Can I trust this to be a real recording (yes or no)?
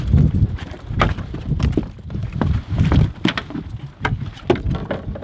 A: yes